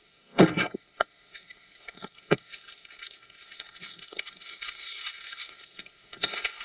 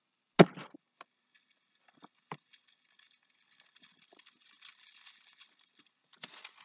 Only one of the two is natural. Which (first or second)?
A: second